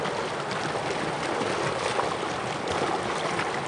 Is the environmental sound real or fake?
real